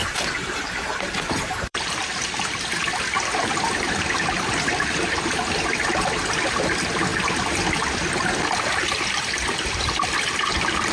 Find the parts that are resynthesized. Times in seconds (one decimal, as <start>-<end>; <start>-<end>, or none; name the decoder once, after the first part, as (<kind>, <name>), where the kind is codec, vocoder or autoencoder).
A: 0.0-7.1 (vocoder, BigVGAN v2); 9.1-10.9